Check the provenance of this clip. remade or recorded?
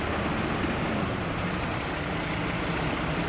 remade